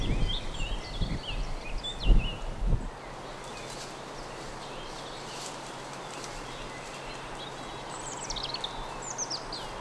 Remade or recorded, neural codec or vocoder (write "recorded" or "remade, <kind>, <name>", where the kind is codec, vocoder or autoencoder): recorded